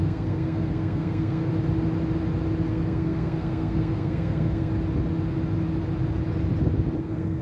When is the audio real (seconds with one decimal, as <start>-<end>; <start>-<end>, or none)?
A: 1.5-2.7; 4.7-7.0